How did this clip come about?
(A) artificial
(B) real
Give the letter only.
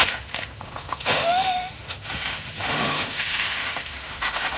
A